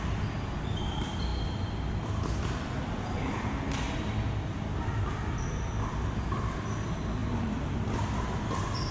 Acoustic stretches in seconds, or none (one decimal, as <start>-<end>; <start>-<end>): 0.0-8.9